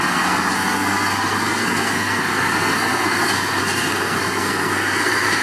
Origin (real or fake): fake